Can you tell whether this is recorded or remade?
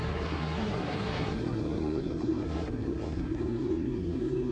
remade